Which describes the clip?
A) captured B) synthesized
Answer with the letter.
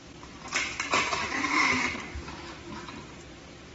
A